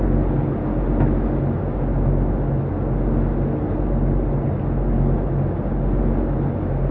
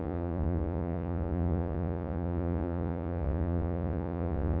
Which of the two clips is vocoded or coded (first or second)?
second